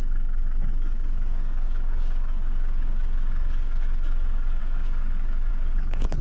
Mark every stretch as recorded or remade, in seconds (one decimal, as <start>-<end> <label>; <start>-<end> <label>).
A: 0.0-6.2 remade